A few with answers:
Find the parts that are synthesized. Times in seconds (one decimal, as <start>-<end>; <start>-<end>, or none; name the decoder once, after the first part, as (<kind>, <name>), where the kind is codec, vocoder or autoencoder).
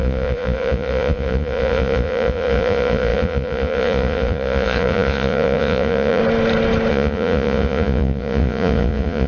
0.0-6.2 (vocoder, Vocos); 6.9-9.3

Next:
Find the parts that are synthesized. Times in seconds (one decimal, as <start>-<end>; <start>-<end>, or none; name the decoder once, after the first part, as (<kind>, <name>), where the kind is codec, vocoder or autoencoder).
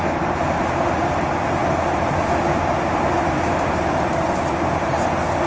none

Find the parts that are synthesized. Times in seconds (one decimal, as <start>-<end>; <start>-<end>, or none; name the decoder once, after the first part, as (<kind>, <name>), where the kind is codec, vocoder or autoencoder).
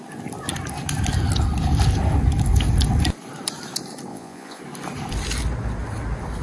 4.1-4.6 (vocoder, Vocos)